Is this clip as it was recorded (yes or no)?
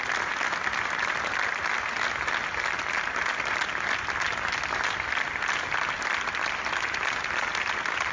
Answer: yes